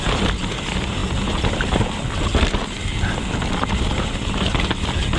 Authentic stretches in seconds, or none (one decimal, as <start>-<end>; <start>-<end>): 0.0-5.2